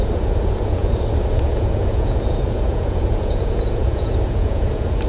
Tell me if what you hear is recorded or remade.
remade